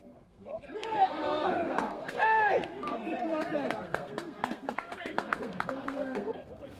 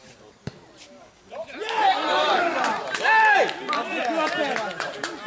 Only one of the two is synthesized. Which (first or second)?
first